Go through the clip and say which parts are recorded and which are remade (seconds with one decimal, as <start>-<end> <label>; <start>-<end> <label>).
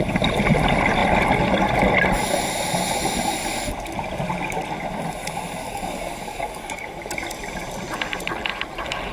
0.0-5.6 recorded; 5.6-7.1 remade; 7.1-9.1 recorded